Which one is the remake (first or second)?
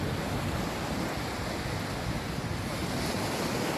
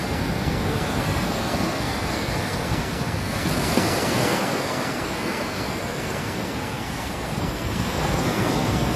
second